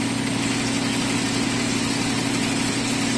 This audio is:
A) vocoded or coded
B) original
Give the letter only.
B